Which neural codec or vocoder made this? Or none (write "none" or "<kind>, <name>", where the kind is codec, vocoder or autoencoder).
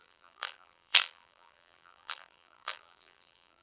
vocoder, BigVGAN v2